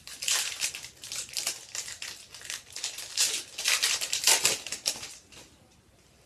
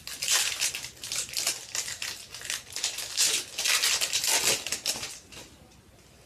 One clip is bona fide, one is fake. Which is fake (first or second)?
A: first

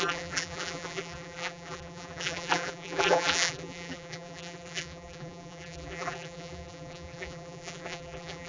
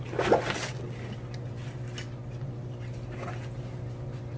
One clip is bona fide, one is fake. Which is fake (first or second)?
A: first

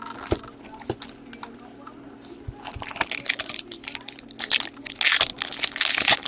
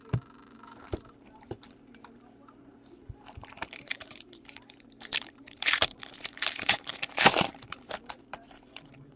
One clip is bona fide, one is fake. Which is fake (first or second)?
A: second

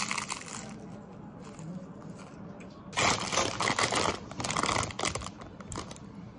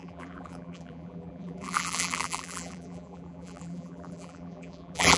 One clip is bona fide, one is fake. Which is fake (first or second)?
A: second